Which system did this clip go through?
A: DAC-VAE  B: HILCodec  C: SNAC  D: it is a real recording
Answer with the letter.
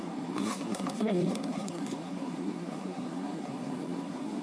C